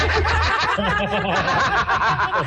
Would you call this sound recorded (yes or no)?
yes